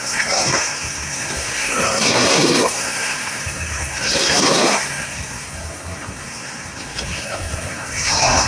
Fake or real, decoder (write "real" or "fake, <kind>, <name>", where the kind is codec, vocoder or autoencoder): fake, codec, SNAC